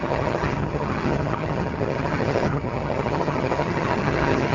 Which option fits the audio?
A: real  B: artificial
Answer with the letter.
B